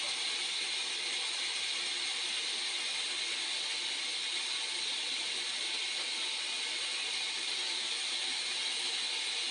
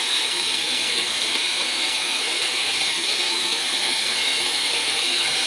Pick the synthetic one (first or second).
second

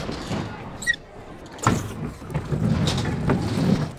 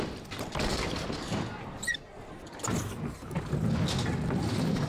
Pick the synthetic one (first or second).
second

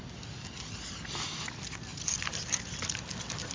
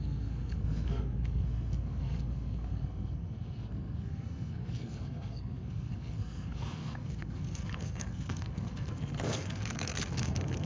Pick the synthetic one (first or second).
second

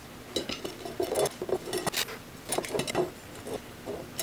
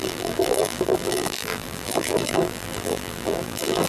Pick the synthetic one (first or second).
second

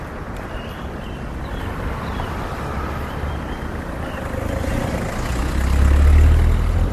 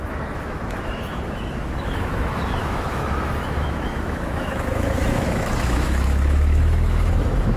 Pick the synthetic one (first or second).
second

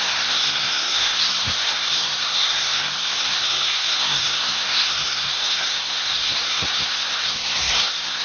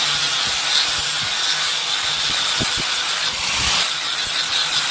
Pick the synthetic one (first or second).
first